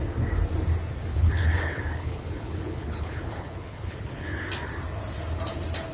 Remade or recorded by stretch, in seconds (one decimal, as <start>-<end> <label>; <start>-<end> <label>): 0.0-1.1 recorded; 1.1-4.3 remade; 4.3-5.9 recorded